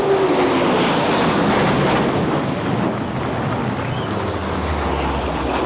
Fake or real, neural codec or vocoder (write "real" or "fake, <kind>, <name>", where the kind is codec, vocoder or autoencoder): real